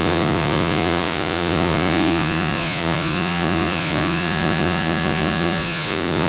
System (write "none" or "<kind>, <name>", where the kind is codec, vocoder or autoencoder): vocoder, Vocos